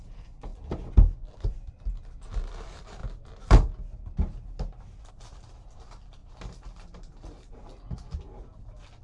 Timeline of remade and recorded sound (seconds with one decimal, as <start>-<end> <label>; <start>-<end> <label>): 0.0-0.5 remade; 0.5-1.3 recorded; 1.3-3.0 remade; 3.0-5.1 recorded; 5.1-6.2 remade; 6.2-6.7 recorded; 6.7-7.7 remade; 7.7-9.0 recorded